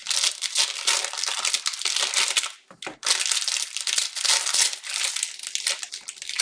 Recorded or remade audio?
recorded